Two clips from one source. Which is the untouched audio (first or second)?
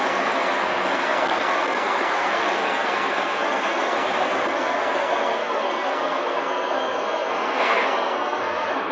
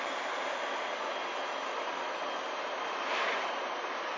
second